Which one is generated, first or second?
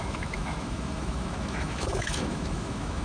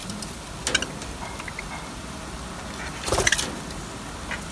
first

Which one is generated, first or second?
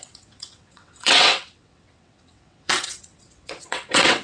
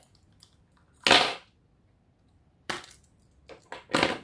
first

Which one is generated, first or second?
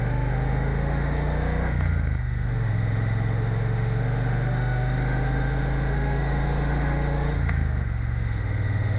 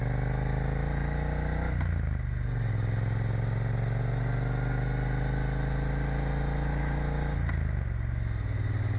first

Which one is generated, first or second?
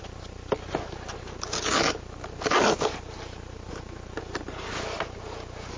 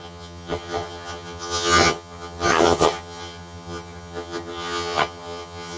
second